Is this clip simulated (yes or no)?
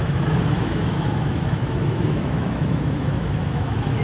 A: yes